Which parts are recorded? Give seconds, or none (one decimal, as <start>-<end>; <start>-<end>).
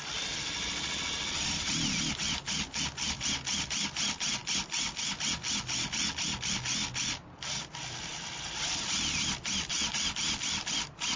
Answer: 0.0-11.2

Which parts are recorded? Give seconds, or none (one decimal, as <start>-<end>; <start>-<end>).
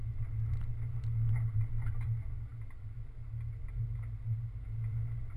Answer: 0.0-5.4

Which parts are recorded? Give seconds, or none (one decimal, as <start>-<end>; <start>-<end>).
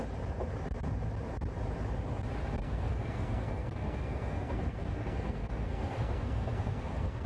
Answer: 0.0-2.6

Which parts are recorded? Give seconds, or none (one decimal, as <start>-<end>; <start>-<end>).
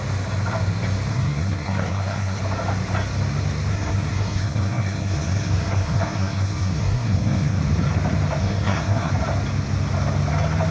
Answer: 0.0-1.1; 2.4-3.7; 7.6-8.4; 9.1-10.7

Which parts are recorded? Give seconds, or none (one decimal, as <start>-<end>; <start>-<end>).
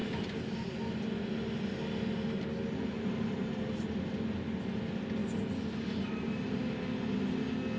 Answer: 0.0-7.8